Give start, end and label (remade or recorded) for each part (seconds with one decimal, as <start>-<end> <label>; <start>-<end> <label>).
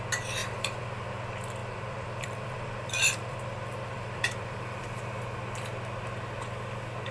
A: 0.0-0.4 recorded; 0.4-1.1 remade; 1.1-1.6 recorded; 1.6-5.0 remade; 5.0-7.1 recorded